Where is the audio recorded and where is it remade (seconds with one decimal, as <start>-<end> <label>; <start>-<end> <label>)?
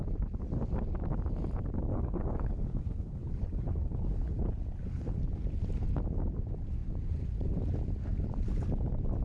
0.0-1.9 recorded; 1.9-5.2 remade; 5.2-9.2 recorded